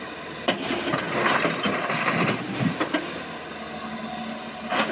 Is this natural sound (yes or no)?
yes